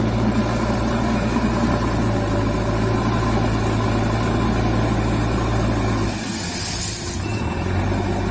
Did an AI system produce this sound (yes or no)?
no